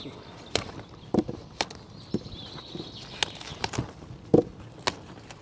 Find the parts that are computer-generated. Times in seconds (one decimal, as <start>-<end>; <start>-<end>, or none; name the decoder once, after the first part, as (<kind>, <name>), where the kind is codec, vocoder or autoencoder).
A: none